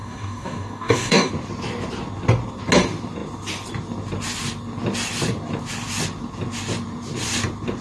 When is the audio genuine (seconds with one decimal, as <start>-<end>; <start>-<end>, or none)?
1.3-7.8